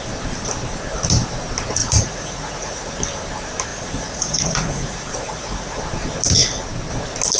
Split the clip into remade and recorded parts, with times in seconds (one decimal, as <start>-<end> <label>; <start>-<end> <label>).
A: 0.0-1.8 recorded; 1.8-2.9 remade; 2.9-3.7 recorded; 3.7-5.8 remade; 5.8-7.4 recorded